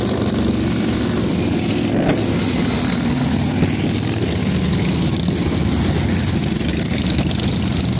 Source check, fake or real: real